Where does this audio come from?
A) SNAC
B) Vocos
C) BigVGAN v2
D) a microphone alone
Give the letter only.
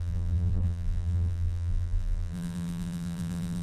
C